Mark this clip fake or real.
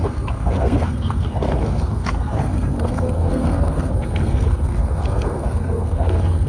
fake